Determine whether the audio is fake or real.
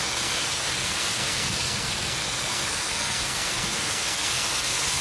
fake